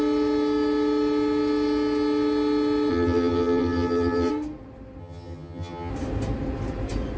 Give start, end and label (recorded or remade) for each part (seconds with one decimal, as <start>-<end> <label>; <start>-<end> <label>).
0.0-2.9 recorded; 2.9-4.3 remade; 4.3-5.0 recorded; 5.0-5.9 remade; 5.9-7.2 recorded